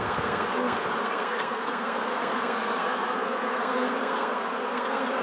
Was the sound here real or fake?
fake